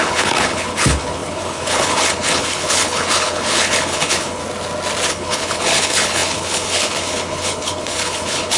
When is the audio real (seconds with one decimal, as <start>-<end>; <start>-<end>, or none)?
4.4-5.1